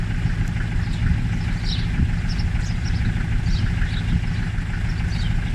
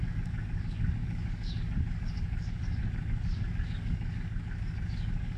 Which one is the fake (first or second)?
second